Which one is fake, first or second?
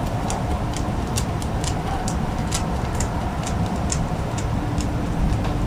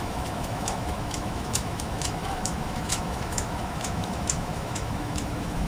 second